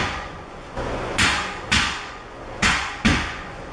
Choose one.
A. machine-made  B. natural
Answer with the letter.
A